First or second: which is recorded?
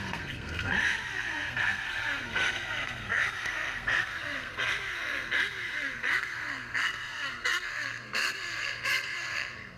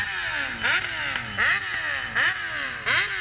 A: second